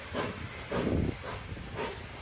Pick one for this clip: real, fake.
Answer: real